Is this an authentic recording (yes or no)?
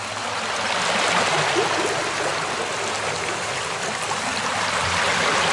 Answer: yes